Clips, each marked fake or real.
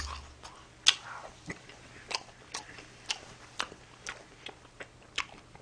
real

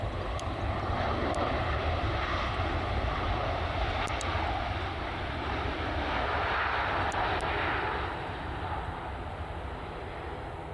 fake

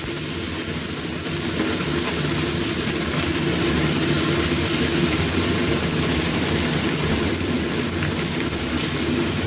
real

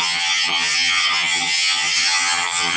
fake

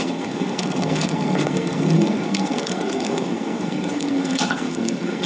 fake